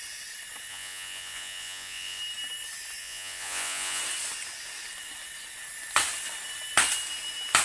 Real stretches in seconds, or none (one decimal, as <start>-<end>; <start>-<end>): 0.0-0.7; 2.2-3.0; 4.0-7.6